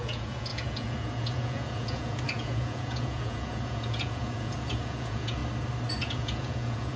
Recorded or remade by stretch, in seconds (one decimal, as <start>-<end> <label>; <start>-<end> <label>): 0.0-5.4 remade; 5.4-6.0 recorded; 6.0-7.0 remade